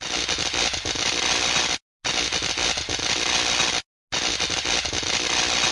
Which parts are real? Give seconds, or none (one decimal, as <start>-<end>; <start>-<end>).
0.0-5.7